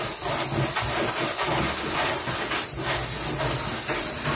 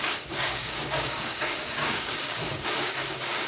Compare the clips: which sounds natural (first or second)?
first